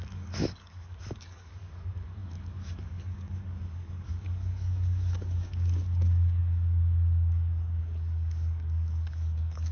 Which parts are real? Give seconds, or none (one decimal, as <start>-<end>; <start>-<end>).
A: none